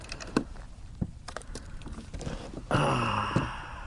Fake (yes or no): yes